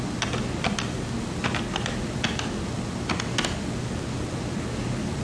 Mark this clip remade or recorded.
recorded